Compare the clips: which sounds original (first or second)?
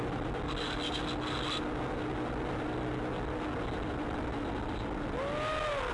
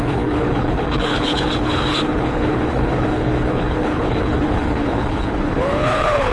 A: first